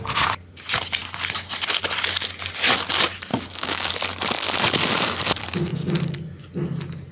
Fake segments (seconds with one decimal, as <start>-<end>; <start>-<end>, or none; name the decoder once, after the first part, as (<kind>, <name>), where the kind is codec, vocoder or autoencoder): 3.3-3.9 (codec, DAC)